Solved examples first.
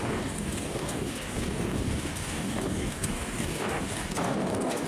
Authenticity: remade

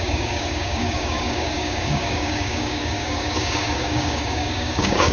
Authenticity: remade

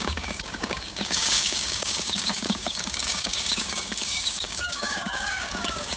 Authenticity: remade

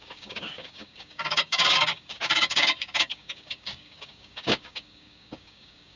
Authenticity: remade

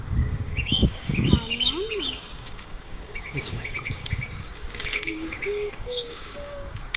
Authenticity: remade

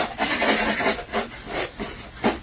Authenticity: recorded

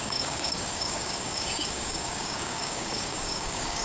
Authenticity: remade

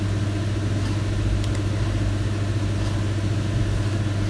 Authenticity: recorded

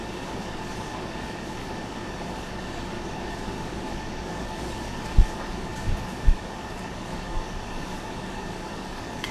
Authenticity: remade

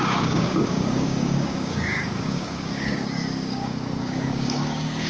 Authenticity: remade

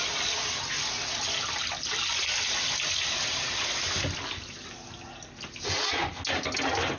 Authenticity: recorded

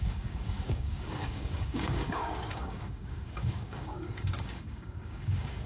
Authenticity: remade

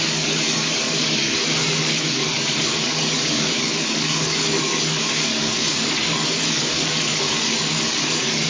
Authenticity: remade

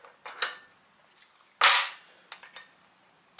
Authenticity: recorded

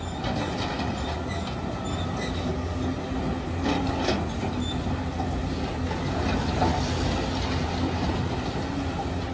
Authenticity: recorded